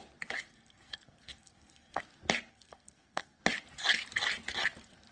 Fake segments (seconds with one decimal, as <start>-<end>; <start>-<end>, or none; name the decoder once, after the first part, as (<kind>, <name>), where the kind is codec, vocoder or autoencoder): 0.5-2.0 (codec, SNAC); 2.5-3.4